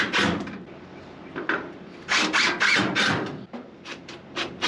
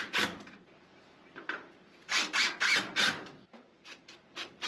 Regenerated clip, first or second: second